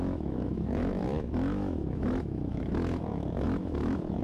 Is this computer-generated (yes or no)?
yes